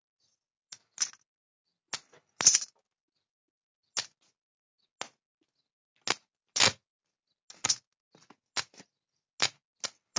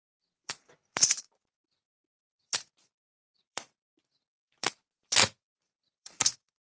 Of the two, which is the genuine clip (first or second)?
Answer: first